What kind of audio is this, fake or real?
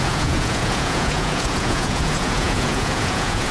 fake